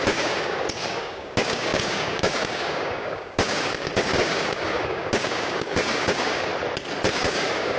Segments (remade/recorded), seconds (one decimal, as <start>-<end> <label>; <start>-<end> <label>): 0.0-6.5 remade; 6.5-7.1 recorded; 7.1-7.8 remade